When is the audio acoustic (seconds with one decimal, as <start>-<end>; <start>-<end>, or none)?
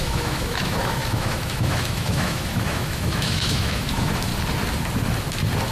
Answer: 4.3-5.7